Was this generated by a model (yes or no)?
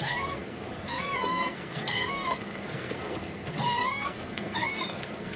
yes